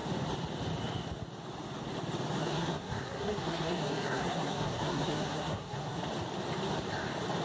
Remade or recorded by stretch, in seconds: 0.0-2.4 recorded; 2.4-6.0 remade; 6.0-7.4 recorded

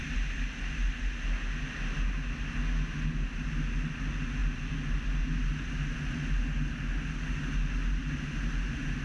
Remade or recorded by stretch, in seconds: 0.0-9.0 recorded

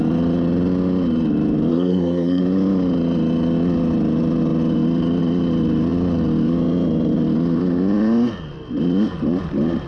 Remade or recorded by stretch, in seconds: 0.0-1.7 recorded; 1.7-2.4 remade; 2.4-9.9 recorded

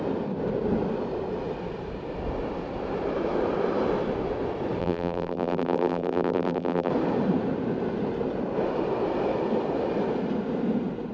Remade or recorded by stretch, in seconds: 0.0-4.8 recorded; 4.8-6.9 remade; 6.9-11.1 recorded